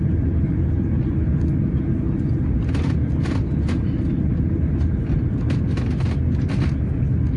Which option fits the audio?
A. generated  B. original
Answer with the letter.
B